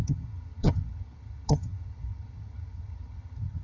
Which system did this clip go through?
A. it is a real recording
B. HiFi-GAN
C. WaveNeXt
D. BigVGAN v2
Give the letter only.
B